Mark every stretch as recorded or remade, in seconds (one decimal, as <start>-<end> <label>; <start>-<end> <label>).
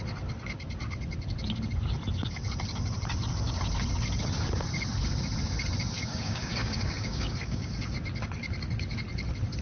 0.0-6.0 recorded; 6.0-7.7 remade; 7.7-9.6 recorded